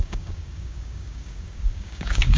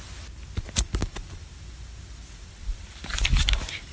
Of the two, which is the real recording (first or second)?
second